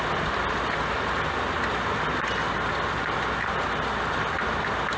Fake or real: real